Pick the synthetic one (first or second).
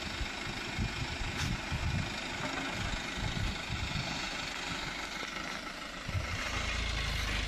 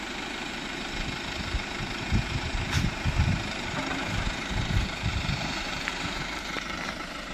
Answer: second